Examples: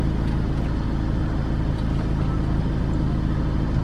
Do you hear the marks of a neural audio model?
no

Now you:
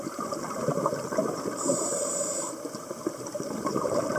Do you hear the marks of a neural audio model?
yes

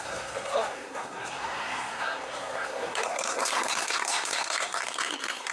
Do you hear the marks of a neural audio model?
yes